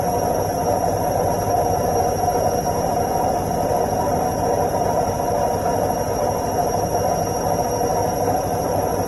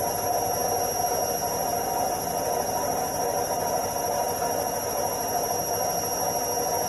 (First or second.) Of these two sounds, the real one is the second